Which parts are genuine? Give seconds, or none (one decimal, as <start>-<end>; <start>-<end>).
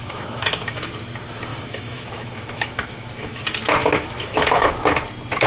0.9-1.5; 3.4-3.8; 4.7-5.5